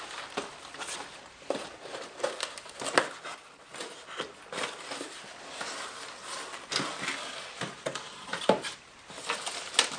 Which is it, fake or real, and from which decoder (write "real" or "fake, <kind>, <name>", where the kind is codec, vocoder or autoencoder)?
real